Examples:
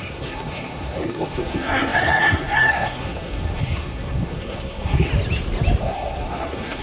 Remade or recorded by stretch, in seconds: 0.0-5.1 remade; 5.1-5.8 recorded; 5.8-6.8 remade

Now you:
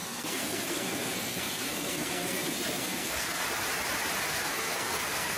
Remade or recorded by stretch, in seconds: 0.0-3.4 remade; 3.4-4.3 recorded; 4.3-5.4 remade

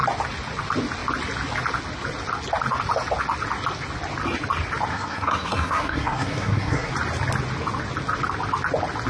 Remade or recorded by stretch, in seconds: 0.0-4.9 recorded; 4.9-6.9 remade; 6.9-9.1 recorded

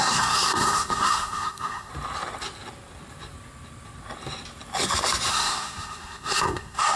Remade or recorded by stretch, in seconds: 0.0-1.9 remade; 1.9-5.3 recorded; 5.3-7.0 remade

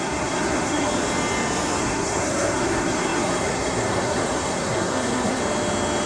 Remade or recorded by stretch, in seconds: 0.0-0.9 remade; 0.9-1.8 recorded; 1.8-5.4 remade; 5.4-6.1 recorded

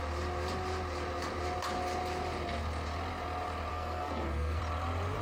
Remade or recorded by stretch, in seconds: 0.0-3.7 recorded; 3.7-4.6 remade; 4.6-5.2 recorded